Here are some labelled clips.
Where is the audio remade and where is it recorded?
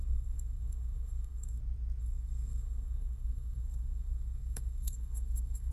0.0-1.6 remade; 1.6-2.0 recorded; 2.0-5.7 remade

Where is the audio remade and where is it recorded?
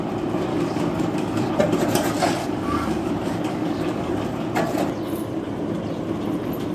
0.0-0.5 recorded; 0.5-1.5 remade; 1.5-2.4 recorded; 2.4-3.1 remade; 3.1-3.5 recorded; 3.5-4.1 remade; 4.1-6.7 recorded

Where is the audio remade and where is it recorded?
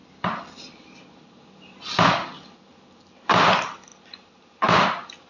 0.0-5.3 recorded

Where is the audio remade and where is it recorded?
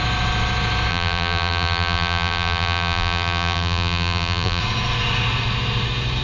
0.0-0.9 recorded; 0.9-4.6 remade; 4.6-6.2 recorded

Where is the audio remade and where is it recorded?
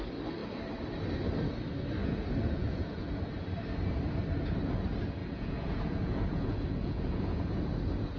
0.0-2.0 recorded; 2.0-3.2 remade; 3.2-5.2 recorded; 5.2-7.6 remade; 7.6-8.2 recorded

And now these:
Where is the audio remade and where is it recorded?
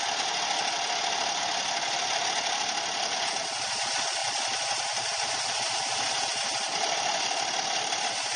0.0-4.2 recorded; 4.2-6.1 remade; 6.1-8.4 recorded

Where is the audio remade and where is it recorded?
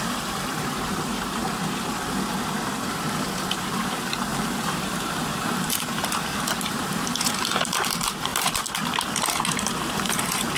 0.0-1.4 remade; 1.4-3.4 recorded; 3.4-8.3 remade; 8.3-9.8 recorded; 9.8-10.6 remade